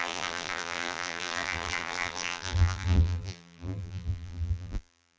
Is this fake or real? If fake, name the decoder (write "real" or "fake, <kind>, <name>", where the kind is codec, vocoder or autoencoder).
fake, vocoder, BigVGAN v2